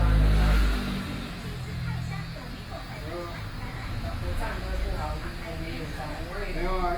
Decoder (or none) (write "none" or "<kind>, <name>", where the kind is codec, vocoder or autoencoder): none